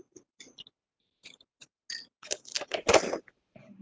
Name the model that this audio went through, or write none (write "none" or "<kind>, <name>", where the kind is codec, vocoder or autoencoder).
none